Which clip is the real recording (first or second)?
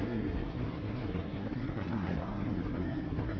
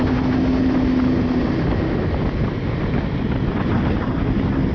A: second